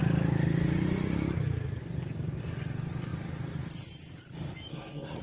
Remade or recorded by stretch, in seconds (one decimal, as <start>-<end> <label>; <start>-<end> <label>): 0.0-4.7 recorded; 4.7-5.2 remade